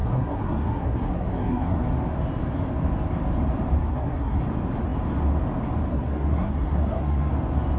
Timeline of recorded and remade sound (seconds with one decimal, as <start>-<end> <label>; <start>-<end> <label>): 0.0-1.8 remade; 1.8-3.9 recorded; 3.9-4.4 remade; 4.4-5.9 recorded; 5.9-7.3 remade; 7.3-7.8 recorded